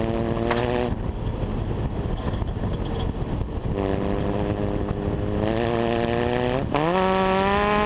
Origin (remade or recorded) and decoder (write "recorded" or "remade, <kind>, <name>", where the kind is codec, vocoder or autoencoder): recorded